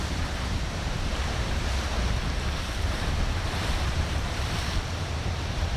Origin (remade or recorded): remade